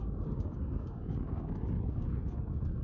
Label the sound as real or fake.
fake